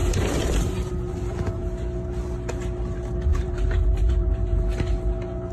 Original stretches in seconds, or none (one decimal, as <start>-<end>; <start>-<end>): 0.9-3.3; 4.6-5.5